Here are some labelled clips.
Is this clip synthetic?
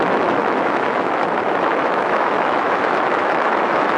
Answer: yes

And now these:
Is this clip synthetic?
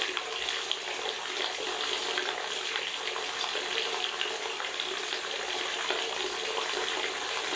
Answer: no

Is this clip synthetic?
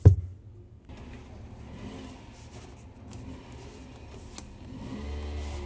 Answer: no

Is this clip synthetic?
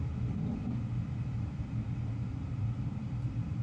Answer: yes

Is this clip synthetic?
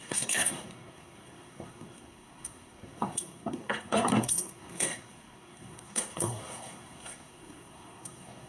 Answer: yes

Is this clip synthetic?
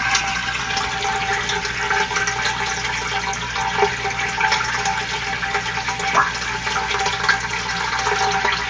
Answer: no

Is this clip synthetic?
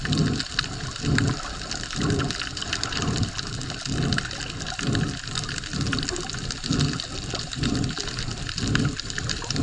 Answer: no